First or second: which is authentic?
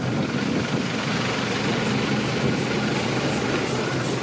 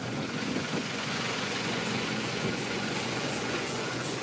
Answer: first